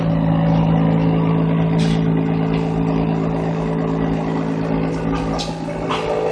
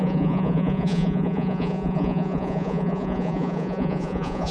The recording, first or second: first